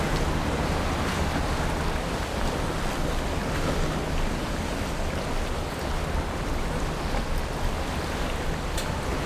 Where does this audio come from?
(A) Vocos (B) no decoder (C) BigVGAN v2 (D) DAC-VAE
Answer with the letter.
B